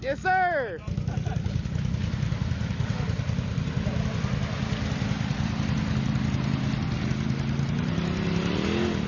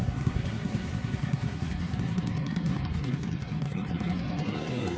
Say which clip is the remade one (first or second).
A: second